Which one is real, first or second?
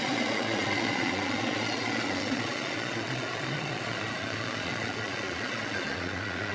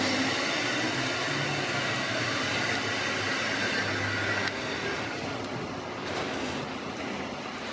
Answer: second